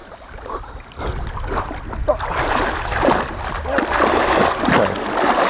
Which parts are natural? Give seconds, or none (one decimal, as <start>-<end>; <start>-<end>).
0.0-5.5